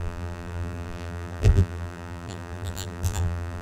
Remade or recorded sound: remade